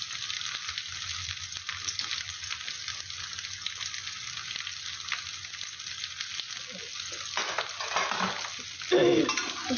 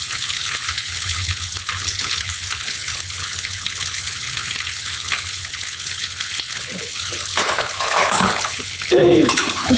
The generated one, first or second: second